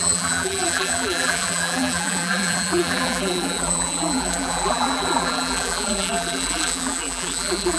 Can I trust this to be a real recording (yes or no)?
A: no